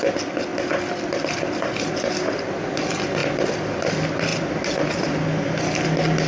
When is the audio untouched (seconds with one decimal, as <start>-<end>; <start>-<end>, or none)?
0.0-6.3